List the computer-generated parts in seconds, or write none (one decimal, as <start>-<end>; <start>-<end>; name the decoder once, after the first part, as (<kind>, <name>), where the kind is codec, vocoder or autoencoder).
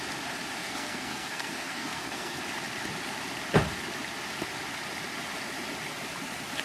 0.6-2.4 (codec, SNAC)